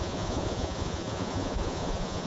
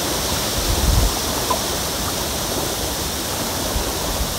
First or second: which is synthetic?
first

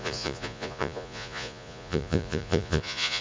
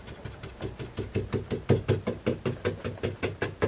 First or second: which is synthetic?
first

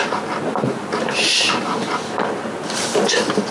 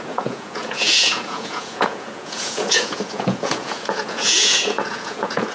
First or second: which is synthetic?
second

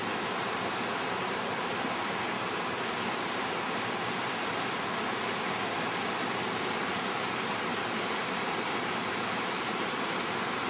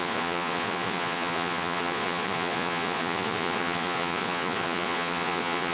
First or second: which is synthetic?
second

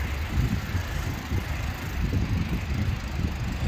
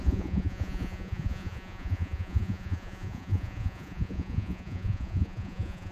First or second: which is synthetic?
second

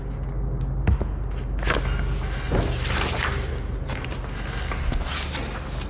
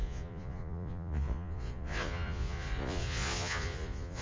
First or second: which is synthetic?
second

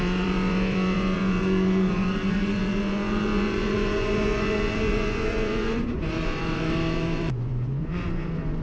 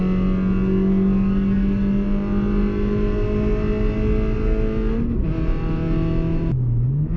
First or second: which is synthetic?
first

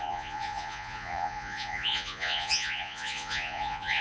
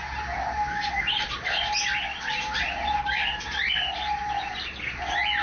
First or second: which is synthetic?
first